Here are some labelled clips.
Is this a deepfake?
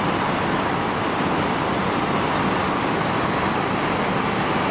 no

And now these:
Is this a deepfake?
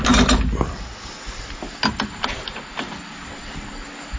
no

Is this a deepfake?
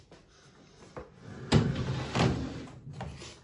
no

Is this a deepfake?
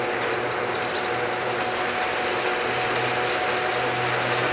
no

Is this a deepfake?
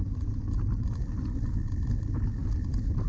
no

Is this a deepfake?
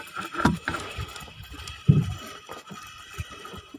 no